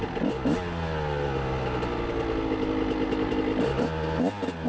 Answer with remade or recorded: recorded